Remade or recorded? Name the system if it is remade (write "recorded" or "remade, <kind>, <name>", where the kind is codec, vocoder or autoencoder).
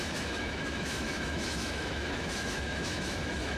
remade, autoencoder, DAC-VAE